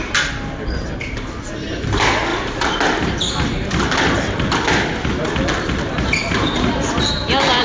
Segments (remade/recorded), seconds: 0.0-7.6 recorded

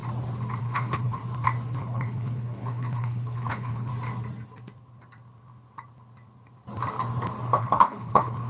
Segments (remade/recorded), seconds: 0.0-0.6 recorded; 0.6-1.2 remade; 1.2-1.8 recorded; 1.8-3.9 remade; 3.9-7.6 recorded; 7.6-8.5 remade

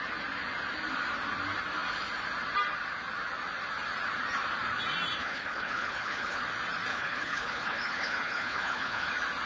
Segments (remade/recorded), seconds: 0.0-5.2 recorded; 5.2-6.4 remade; 6.4-6.9 recorded; 6.9-9.1 remade; 9.1-9.5 recorded

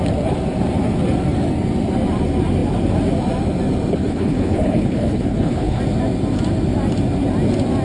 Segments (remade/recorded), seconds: 0.0-3.9 recorded; 3.9-5.8 remade; 5.8-7.8 recorded